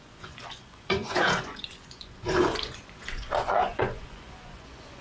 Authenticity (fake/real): fake